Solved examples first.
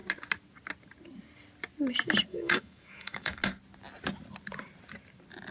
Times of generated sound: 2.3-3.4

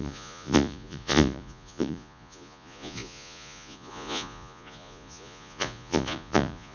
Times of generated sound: 0.0-6.7

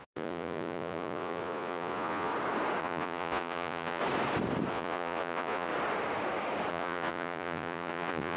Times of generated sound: 0.0-2.3; 2.8-4.0; 4.7-5.7; 6.7-8.4

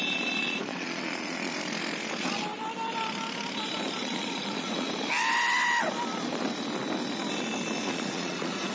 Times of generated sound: 0.4-1.6; 4.0-4.9; 7.8-8.7

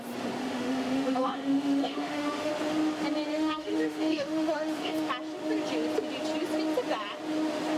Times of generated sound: 0.4-2.5; 3.3-5.1